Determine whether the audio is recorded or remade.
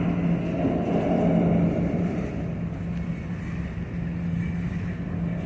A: recorded